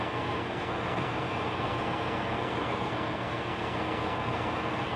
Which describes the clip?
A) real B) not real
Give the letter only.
B